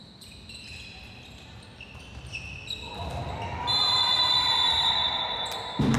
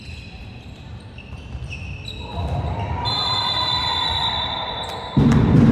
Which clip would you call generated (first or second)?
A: second